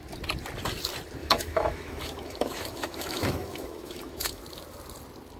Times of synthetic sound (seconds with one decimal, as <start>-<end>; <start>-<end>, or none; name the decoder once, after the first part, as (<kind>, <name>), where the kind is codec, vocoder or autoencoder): 1.2-4.4 (autoencoder, DAC-VAE)